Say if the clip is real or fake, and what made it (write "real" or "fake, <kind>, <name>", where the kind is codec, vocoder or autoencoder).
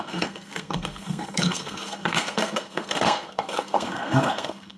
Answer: fake, codec, SNAC